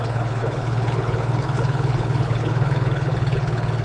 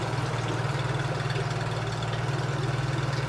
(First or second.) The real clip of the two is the second